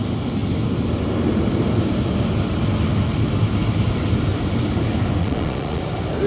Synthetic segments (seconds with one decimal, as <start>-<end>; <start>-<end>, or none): 5.2-5.8